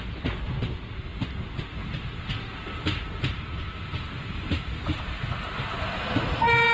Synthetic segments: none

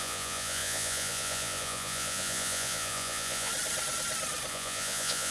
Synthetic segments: 0.0-3.5 (vocoder, Vocos); 4.5-5.3

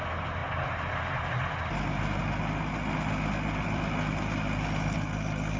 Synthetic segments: none

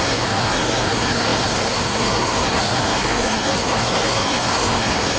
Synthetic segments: 0.0-5.2 (codec, SNAC)

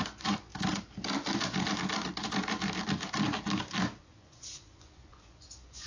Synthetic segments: 0.0-0.5 (vocoder, Vocos); 4.0-5.9

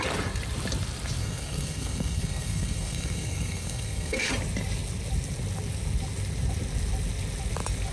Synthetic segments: 1.2-4.3 (codec, SNAC)

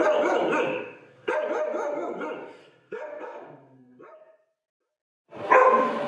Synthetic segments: 0.7-1.3 (codec, SNAC); 2.6-4.0